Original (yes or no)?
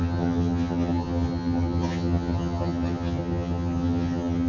no